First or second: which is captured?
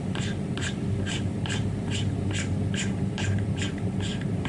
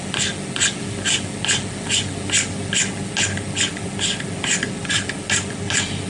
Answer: second